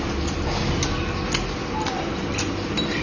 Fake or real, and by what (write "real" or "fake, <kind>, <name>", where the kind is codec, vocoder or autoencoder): real